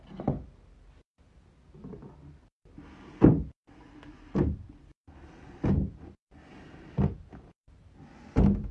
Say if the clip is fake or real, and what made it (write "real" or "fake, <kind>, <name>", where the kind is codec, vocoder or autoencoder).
real